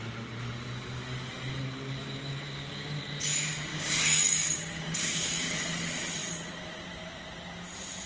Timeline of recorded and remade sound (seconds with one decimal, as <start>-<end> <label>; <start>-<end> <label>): 0.0-2.0 recorded; 2.0-3.0 remade; 3.0-3.7 recorded; 3.7-5.5 remade; 5.5-8.1 recorded